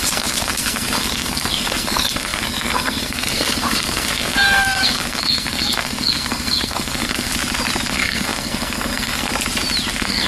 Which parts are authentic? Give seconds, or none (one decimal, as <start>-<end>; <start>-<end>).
7.3-7.9; 9.3-9.9